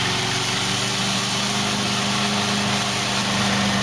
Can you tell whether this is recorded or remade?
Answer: recorded